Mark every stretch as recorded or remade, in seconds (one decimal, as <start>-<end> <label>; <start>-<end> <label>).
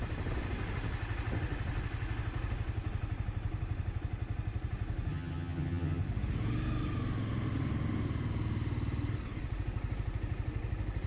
0.0-5.1 recorded; 5.1-6.0 remade; 6.0-11.1 recorded